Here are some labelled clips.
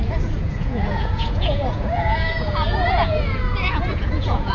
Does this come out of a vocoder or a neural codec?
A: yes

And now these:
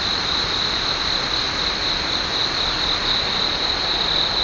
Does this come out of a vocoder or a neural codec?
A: no